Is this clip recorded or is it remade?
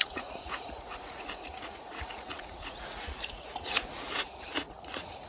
remade